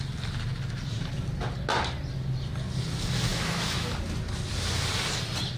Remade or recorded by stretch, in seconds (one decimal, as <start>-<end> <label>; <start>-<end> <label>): 0.0-3.3 recorded; 3.3-3.9 remade; 3.9-5.6 recorded